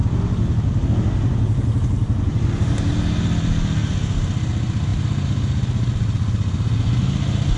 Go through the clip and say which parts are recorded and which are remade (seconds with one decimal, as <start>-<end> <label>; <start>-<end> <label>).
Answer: 0.0-2.3 recorded; 2.3-2.9 remade; 2.9-7.6 recorded